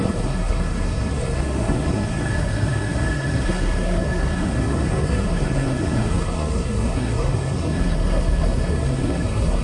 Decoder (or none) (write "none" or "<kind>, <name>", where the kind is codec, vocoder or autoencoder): codec, SNAC